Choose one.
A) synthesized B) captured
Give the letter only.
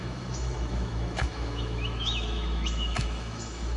A